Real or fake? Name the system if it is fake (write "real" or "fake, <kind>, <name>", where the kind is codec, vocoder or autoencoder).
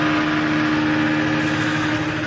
real